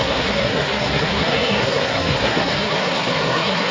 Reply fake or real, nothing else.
fake